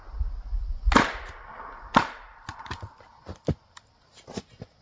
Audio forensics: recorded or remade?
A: recorded